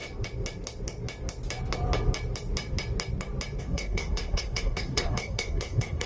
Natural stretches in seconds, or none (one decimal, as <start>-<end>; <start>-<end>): 0.0-3.6